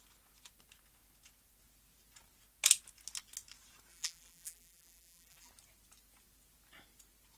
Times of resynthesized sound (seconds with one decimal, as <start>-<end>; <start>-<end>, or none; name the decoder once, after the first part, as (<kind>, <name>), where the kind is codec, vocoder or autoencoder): 3.9-5.5 (vocoder, BigVGAN v2)

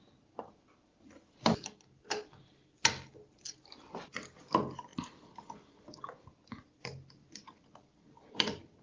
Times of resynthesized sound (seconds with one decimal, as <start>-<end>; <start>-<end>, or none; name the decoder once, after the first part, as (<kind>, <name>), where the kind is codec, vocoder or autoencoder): 7.2-8.8 (vocoder, BigVGAN v2)

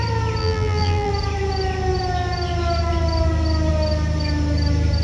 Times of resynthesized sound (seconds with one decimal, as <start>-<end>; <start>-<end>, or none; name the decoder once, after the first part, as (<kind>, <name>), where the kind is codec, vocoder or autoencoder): 0.4-1.1 (vocoder, BigVGAN v2)

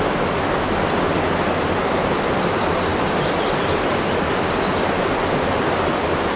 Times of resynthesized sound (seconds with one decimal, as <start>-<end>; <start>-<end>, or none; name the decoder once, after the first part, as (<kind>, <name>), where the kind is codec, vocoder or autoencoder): none

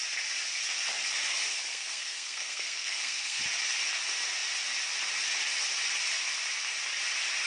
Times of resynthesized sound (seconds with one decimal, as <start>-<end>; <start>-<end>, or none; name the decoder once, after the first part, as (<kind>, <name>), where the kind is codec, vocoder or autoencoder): 1.7-3.4 (codec, SNAC)